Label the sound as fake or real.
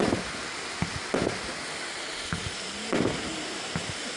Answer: real